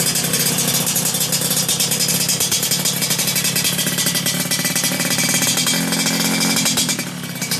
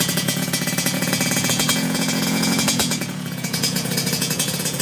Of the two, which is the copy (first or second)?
second